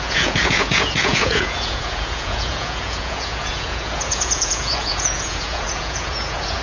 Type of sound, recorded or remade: remade